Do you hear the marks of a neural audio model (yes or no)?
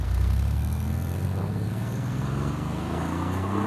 yes